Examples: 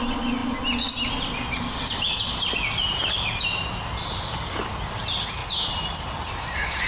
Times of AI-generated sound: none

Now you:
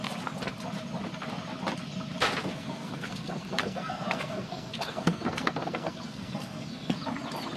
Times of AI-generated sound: 2.4-7.0 (codec, SNAC)

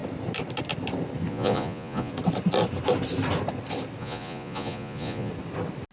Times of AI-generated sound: 1.3-2.1 (vocoder, Vocos); 4.0-5.3

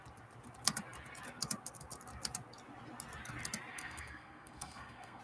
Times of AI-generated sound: 3.7-5.2 (codec, SNAC)

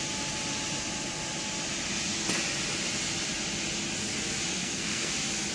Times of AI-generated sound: 4.5-5.1 (codec, SNAC)

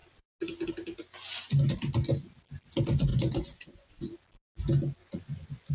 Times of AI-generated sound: 3.1-3.9 (vocoder, Vocos); 5.0-5.7

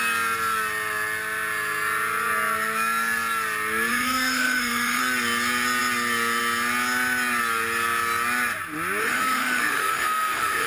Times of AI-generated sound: 3.9-5.0 (autoencoder, DAC-VAE); 9.0-10.7